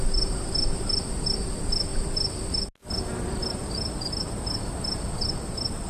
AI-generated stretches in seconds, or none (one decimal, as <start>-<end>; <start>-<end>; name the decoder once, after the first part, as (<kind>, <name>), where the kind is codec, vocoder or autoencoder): none